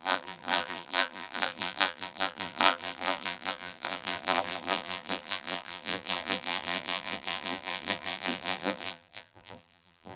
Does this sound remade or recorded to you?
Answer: remade